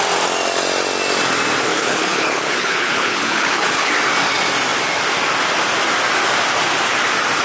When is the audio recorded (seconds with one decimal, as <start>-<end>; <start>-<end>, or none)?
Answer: 0.0-1.7; 3.9-7.4